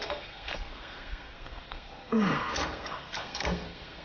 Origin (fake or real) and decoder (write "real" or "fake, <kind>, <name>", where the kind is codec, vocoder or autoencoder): fake, codec, SNAC